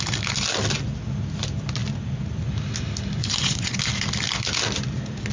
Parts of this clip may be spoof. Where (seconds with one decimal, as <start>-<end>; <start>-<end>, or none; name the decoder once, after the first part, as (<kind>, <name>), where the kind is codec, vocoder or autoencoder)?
3.2-3.8 (vocoder, Vocos)